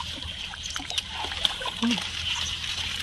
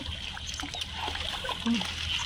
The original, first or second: second